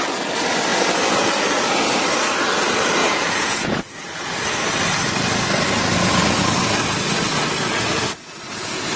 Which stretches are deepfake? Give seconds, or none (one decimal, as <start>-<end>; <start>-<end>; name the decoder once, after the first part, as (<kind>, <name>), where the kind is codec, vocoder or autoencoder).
3.0-3.8 (vocoder, Vocos)

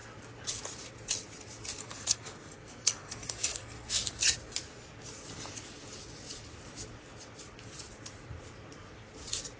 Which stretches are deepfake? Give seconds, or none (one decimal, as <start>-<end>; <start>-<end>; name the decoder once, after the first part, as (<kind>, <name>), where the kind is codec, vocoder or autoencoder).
1.8-4.2 (codec, SNAC)

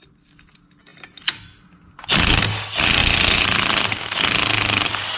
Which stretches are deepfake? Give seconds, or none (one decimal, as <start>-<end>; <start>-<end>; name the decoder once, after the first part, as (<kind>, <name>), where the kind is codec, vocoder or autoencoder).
none

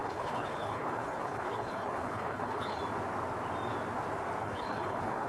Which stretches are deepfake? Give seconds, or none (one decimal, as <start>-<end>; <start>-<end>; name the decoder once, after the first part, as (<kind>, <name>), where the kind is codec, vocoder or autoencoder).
0.0-2.8 (codec, HILCodec); 4.4-5.3

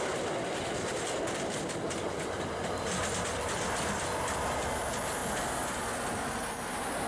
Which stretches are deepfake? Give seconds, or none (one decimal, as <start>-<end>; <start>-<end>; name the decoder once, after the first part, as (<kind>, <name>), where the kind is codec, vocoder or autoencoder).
none

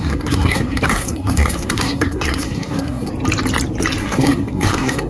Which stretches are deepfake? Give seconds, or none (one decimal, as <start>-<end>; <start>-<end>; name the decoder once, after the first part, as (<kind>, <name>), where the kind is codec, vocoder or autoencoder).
0.0-3.1 (codec, SNAC); 4.0-5.1

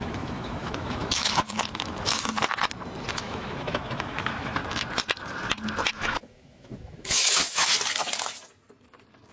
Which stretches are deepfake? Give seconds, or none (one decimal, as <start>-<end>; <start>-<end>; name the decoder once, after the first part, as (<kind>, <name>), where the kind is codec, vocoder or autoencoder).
0.0-2.3 (autoencoder, DAC-VAE); 3.1-4.6; 5.9-7.7